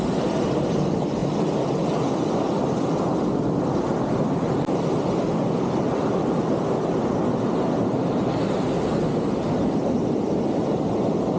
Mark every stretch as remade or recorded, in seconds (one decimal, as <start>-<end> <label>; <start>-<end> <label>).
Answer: 0.0-11.4 recorded